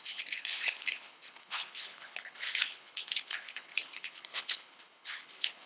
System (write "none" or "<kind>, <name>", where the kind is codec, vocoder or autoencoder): codec, HILCodec